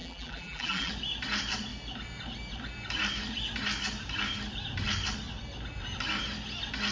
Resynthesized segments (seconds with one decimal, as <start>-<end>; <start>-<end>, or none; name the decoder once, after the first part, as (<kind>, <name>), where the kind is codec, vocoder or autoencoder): 0.0-0.9 (vocoder, BigVGAN v2)